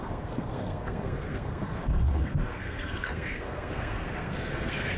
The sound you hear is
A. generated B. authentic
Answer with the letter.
A